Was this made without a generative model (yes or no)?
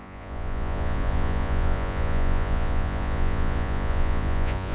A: no